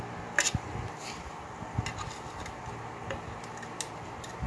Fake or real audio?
real